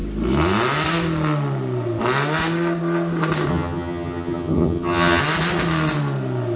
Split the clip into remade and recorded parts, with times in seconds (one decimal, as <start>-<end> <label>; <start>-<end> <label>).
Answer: 0.0-3.5 recorded; 3.5-5.2 remade; 5.2-6.6 recorded